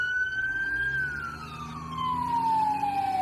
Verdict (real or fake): real